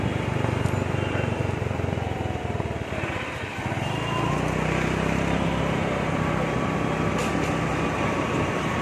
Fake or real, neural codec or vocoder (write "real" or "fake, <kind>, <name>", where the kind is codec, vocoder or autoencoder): real